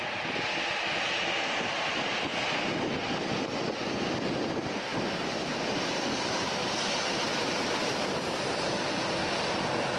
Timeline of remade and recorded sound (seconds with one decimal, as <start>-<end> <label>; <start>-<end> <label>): 0.0-4.9 recorded; 4.9-9.0 remade; 9.0-10.0 recorded